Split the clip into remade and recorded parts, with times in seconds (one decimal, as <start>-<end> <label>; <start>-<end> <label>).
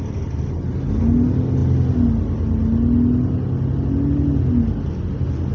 0.0-5.5 recorded